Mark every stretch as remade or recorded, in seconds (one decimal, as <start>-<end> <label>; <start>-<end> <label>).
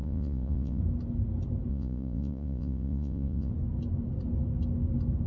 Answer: 0.0-0.8 remade; 0.8-1.7 recorded; 1.7-3.5 remade; 3.5-5.3 recorded